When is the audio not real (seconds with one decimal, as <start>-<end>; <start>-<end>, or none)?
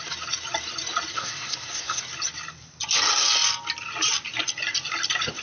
1.1-2.0